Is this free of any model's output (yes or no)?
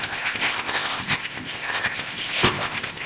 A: no